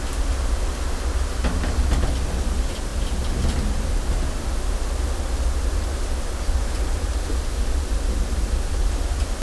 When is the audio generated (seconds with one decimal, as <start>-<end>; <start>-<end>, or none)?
none